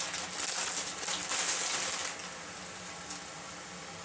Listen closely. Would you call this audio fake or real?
real